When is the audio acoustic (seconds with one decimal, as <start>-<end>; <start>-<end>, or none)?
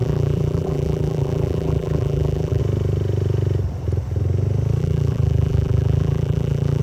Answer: 2.6-4.8